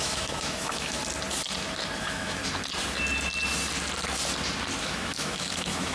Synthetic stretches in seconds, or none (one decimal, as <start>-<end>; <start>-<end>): 0.0-1.0; 2.0-2.4; 4.8-5.9